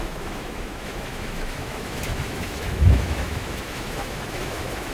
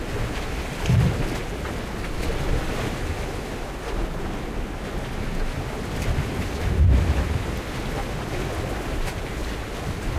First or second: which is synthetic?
first